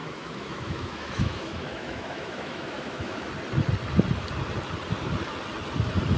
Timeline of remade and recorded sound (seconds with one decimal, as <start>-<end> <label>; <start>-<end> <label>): 0.0-3.3 remade; 3.3-6.2 recorded